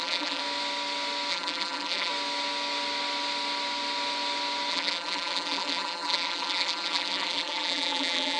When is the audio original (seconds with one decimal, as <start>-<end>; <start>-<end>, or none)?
0.4-1.3; 2.1-4.7